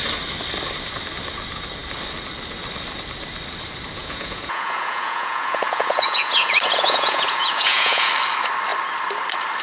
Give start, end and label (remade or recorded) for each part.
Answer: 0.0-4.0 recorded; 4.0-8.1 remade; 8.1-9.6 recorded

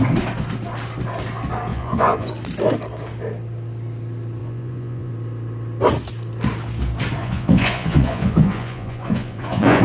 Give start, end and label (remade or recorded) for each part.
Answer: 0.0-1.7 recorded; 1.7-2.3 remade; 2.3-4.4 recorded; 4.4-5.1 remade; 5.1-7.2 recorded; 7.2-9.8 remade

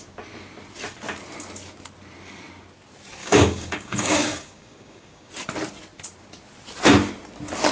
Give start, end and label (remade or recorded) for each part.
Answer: 0.0-3.2 recorded; 3.2-5.3 remade; 5.3-7.7 recorded

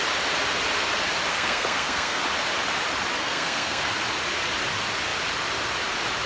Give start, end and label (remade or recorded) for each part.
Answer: 0.0-1.3 recorded; 1.3-2.2 remade; 2.2-3.2 recorded; 3.2-3.9 remade; 3.9-6.3 recorded

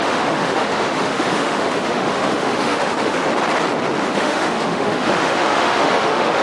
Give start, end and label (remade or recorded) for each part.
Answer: 0.0-3.3 remade; 3.3-4.0 recorded; 4.0-6.4 remade

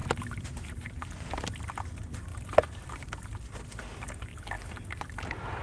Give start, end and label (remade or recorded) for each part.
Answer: 0.0-1.0 remade; 1.0-2.3 recorded; 2.3-2.9 remade; 2.9-5.6 recorded

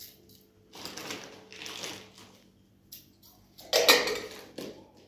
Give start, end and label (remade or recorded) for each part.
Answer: 0.0-5.1 recorded

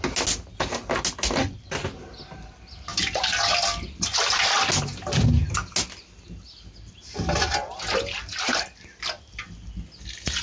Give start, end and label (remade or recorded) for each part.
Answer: 0.0-10.4 recorded